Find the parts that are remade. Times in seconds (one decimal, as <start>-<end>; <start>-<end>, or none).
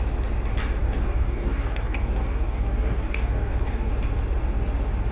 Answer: 0.8-3.9